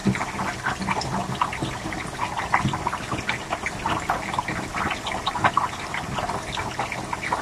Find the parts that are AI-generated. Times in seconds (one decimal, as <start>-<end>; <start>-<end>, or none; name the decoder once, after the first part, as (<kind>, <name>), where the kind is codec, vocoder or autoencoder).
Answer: none